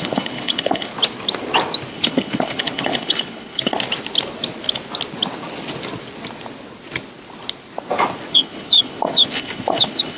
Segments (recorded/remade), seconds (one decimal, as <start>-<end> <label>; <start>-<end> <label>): 0.0-0.9 remade; 0.9-1.9 recorded; 1.9-3.7 remade; 3.7-8.3 recorded; 8.3-10.2 remade